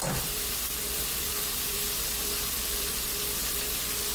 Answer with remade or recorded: remade